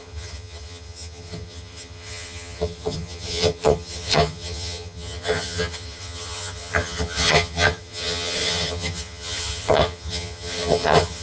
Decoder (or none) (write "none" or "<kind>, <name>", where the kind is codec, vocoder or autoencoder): vocoder, HiFi-GAN